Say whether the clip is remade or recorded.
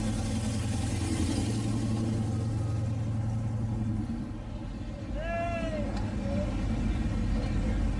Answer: recorded